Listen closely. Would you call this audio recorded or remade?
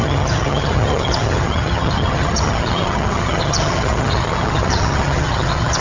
remade